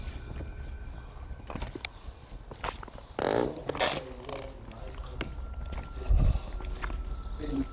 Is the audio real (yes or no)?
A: yes